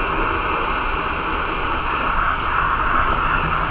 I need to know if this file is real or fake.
real